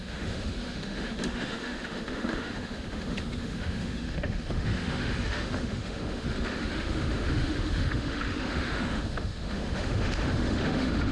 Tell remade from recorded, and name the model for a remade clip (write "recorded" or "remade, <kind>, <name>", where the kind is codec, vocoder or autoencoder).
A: remade, autoencoder, DAC-VAE